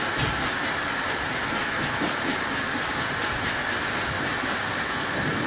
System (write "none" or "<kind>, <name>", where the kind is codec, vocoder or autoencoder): none